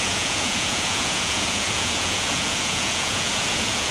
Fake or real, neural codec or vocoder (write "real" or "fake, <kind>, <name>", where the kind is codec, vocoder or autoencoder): fake, vocoder, Vocos